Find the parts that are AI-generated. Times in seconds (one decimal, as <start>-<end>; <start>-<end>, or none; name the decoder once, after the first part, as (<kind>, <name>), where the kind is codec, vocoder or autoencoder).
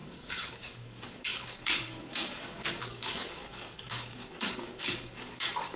0.0-5.8 (codec, DAC)